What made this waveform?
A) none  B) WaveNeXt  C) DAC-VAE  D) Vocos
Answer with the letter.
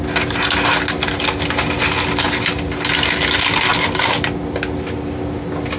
A